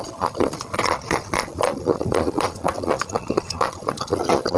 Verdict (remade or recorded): remade